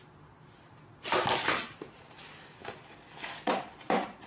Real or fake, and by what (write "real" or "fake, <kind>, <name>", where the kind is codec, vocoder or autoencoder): fake, vocoder, BigVGAN v2